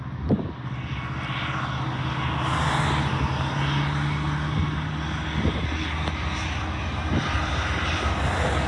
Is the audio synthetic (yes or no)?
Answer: no